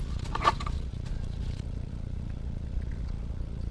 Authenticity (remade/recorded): remade